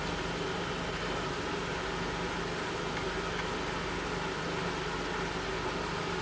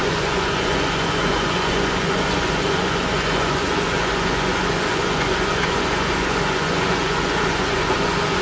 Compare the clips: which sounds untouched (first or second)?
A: first